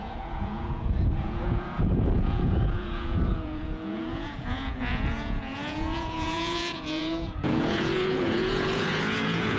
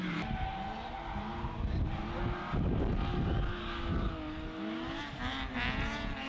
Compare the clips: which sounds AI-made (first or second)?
first